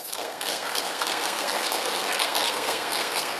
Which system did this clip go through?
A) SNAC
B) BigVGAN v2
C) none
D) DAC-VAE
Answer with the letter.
A